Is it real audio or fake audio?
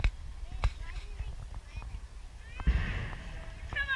real